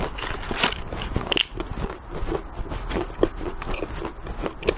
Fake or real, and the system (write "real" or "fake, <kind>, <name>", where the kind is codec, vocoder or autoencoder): real